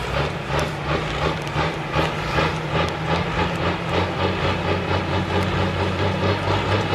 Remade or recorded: recorded